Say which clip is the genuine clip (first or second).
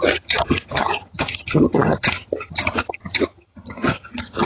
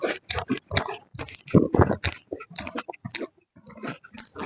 second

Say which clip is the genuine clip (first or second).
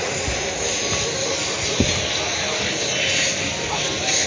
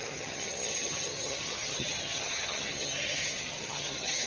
first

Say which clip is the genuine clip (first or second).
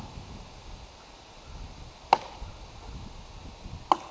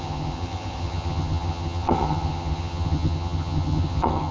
first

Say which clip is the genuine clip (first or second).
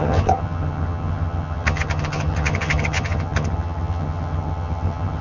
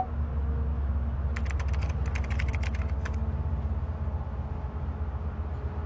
second